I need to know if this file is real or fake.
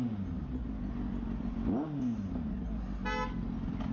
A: real